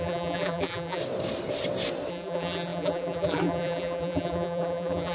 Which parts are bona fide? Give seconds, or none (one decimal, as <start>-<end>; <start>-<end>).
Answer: 1.0-2.1